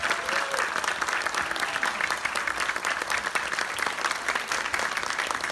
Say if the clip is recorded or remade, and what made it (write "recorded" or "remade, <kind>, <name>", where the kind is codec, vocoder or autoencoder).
recorded